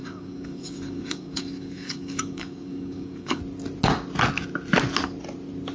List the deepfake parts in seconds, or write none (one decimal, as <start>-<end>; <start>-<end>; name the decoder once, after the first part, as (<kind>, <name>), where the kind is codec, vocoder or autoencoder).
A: 0.0-3.4 (codec, DAC)